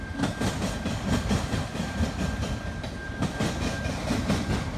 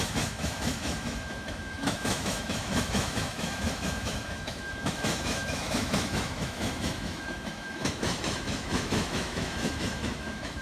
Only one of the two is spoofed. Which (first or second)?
second